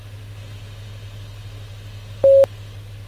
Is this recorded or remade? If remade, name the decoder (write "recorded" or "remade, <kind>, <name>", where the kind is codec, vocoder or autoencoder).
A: recorded